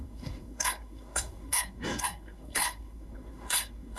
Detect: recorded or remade remade